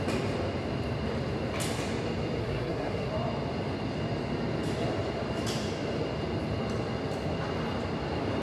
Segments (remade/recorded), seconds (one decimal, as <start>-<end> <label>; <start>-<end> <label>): 0.0-2.4 recorded; 2.4-3.1 remade; 3.1-8.4 recorded